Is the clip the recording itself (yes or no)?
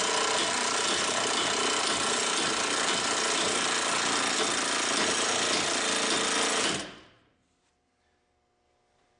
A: yes